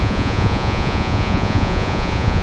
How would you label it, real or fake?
fake